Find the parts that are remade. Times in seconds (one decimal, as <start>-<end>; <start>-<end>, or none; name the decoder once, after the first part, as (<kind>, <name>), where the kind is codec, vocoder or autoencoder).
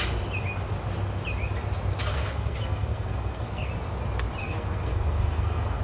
2.1-3.7 (codec, SNAC); 4.4-5.8